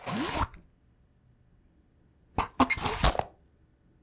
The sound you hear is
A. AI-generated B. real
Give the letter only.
B